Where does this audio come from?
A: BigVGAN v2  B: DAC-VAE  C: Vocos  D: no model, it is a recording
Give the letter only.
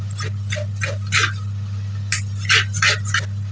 D